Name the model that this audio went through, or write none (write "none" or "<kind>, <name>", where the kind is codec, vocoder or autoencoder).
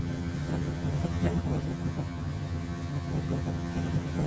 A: vocoder, HiFi-GAN